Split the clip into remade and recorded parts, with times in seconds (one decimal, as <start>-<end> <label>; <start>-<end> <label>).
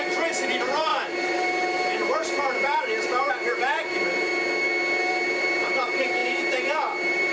0.0-4.3 remade; 4.3-5.1 recorded; 5.1-7.3 remade